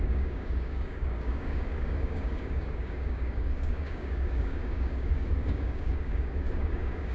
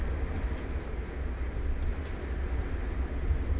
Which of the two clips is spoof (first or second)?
first